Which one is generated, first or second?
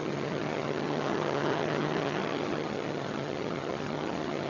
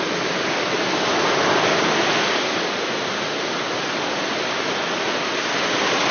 first